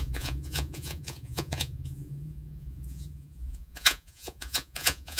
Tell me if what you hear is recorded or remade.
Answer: remade